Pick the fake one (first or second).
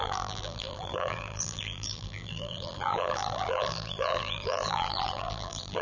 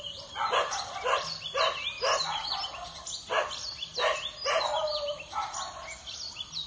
first